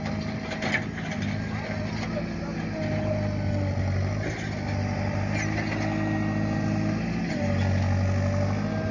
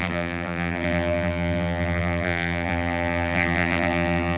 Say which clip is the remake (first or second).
second